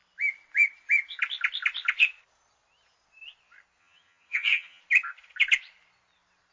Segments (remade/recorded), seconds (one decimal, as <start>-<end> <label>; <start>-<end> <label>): 0.0-3.8 recorded; 3.8-4.8 remade; 4.8-6.5 recorded